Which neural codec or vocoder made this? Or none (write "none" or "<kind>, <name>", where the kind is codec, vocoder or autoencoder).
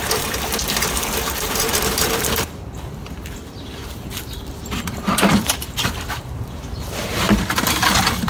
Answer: vocoder, BigVGAN v2